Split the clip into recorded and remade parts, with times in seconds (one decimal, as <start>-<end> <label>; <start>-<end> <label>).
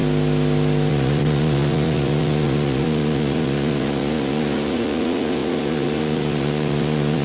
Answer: 0.0-0.9 recorded; 0.9-7.2 remade